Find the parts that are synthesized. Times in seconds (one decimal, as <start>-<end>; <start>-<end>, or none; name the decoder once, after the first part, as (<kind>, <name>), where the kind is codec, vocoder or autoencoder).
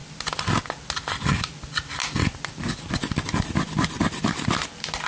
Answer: 0.0-5.1 (vocoder, BigVGAN v2)